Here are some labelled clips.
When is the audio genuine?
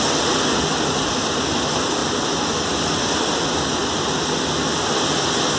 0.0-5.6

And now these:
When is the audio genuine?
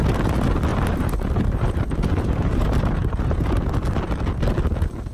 0.0-0.7; 3.7-5.1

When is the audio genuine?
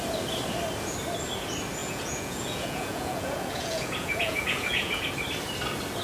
0.0-1.8; 5.1-6.0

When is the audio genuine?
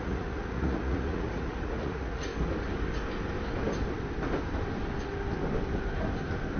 2.3-6.6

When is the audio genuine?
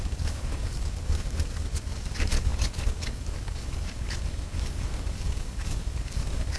none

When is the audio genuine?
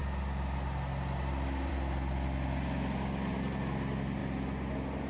0.0-5.1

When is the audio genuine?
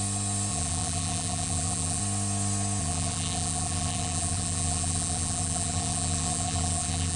0.0-0.5; 2.0-2.8